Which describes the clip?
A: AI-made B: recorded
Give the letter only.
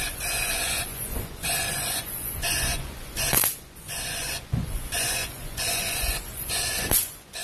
A